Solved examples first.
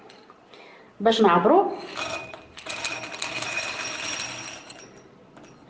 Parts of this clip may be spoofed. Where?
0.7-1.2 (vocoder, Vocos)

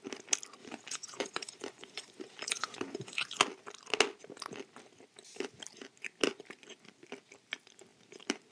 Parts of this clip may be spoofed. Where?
0.6-3.4 (vocoder, Vocos)

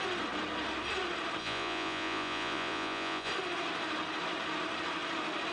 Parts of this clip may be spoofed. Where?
1.4-3.3 (vocoder, Vocos)